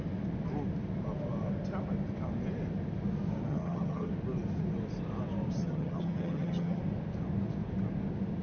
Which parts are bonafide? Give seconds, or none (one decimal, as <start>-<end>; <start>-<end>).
0.0-3.5; 4.1-5.6; 6.8-8.4